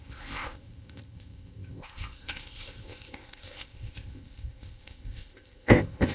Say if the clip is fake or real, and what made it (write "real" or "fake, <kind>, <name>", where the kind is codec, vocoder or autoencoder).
fake, codec, ZipCodec